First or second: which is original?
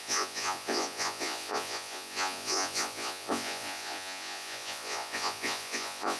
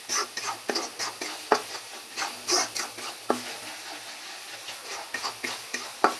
second